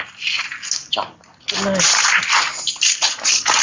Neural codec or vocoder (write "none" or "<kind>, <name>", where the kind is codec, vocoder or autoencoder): none